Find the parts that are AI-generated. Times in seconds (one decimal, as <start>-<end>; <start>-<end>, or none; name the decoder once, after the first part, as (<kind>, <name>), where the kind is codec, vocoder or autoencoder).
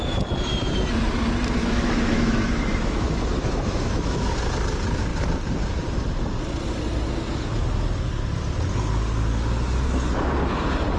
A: 1.6-4.3 (autoencoder, DAC-VAE)